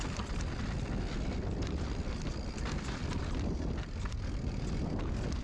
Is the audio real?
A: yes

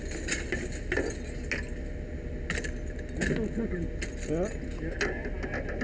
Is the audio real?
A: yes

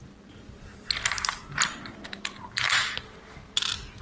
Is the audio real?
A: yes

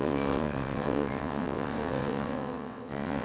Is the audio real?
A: no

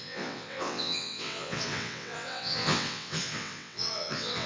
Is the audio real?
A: no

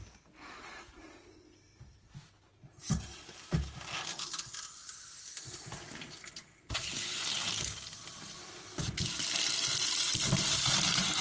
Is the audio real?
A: yes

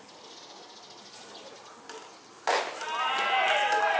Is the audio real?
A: yes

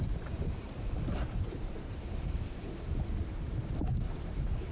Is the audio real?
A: yes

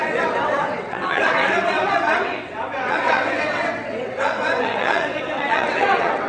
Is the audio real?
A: no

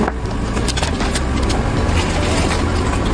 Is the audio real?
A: yes